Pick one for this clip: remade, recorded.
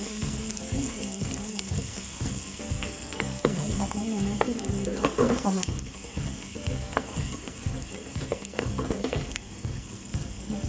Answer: remade